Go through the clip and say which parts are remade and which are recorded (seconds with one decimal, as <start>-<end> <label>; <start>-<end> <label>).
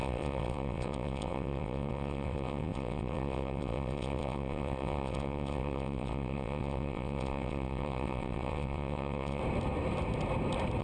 0.0-9.4 remade; 9.4-10.8 recorded